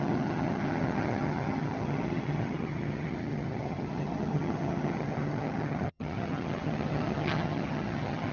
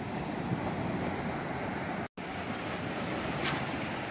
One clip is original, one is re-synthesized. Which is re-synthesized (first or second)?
first